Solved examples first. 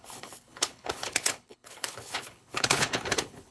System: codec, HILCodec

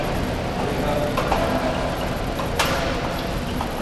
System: none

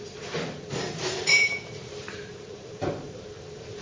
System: vocoder, BigVGAN v2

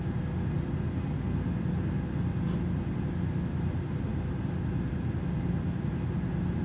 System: none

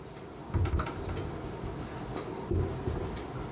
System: vocoder, BigVGAN v2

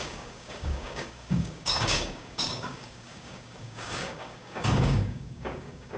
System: codec, DAC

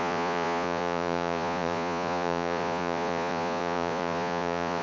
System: vocoder, Vocos